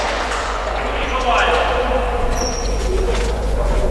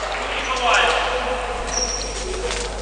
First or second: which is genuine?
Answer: second